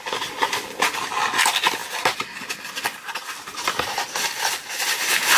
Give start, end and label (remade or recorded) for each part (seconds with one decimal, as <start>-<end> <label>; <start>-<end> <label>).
0.0-3.2 recorded; 3.2-5.0 remade; 5.0-5.4 recorded